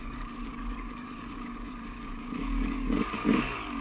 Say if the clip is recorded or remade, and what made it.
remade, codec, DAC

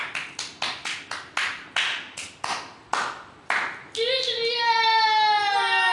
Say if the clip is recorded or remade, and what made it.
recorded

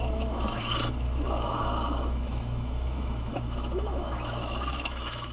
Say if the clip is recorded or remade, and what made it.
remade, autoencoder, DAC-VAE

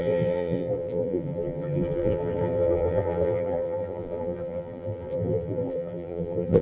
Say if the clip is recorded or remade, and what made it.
remade, vocoder, BigVGAN v2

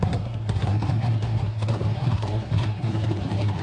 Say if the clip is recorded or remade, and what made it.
remade, codec, SNAC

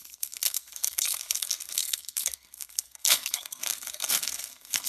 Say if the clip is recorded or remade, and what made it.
remade, codec, SNAC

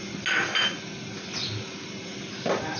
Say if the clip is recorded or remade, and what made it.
recorded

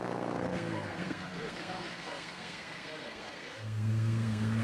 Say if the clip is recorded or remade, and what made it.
remade, codec, SNAC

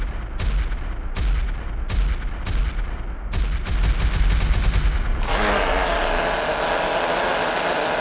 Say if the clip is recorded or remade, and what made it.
recorded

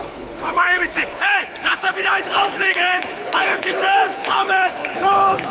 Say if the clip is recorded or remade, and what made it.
remade, codec, HILCodec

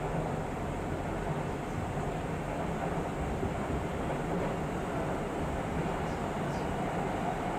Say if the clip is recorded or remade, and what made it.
recorded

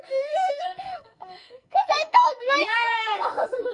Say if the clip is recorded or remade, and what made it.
remade, codec, SNAC